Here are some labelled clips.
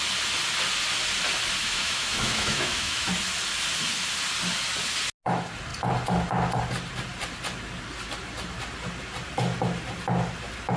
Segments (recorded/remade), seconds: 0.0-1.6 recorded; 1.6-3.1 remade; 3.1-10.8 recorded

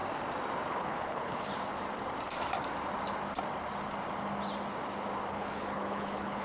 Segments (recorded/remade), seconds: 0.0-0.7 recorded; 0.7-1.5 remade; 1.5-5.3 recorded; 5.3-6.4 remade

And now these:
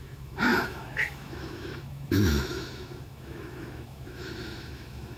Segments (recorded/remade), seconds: 0.0-5.2 remade

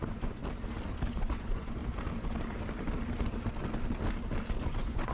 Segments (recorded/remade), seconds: 0.0-0.4 remade; 0.4-1.1 recorded; 1.1-1.8 remade; 1.8-4.6 recorded; 4.6-5.1 remade

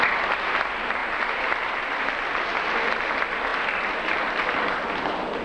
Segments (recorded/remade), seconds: 0.0-5.4 recorded

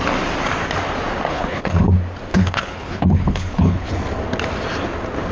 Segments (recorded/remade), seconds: 0.0-1.3 recorded; 1.3-1.9 remade; 1.9-2.3 recorded; 2.3-3.9 remade; 3.9-5.3 recorded

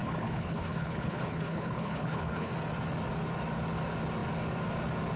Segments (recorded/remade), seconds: 0.0-2.5 remade; 2.5-5.2 recorded

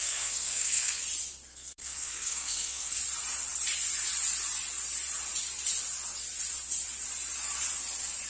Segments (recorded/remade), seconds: 0.0-1.0 remade; 1.0-1.5 recorded; 1.5-3.0 remade; 3.0-8.3 recorded